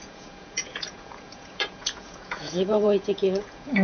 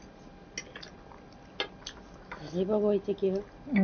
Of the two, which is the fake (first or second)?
first